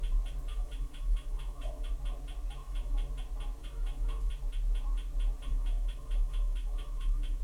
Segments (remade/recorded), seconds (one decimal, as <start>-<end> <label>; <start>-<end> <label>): 0.0-0.5 recorded; 0.5-1.9 remade; 1.9-2.6 recorded; 2.6-3.1 remade; 3.1-3.6 recorded; 3.6-4.3 remade; 4.3-5.5 recorded; 5.5-7.4 remade